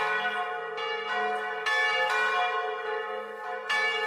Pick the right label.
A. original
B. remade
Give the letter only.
A